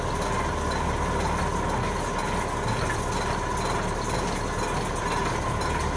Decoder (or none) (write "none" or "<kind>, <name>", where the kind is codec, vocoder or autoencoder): none